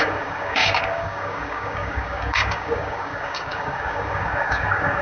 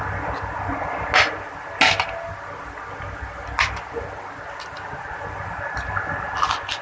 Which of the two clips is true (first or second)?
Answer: second